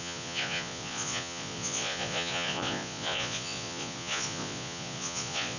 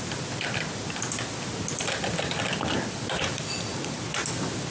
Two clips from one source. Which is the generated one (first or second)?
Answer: first